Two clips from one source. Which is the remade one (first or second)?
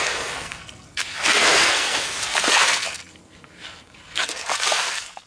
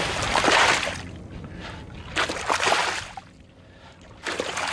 first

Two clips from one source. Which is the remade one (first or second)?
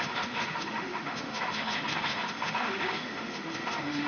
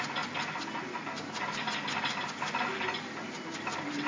first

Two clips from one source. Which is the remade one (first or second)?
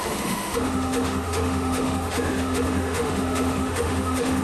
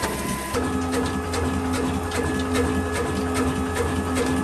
first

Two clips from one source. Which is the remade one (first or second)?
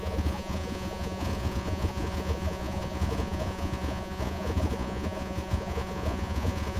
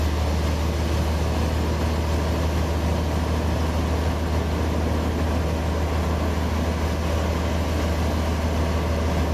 first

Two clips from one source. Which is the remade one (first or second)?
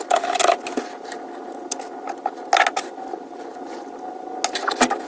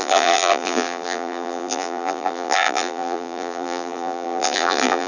second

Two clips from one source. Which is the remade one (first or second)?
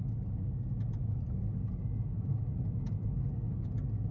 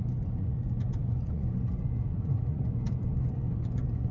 second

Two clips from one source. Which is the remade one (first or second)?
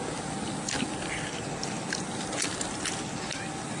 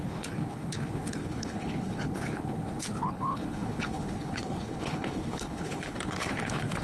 second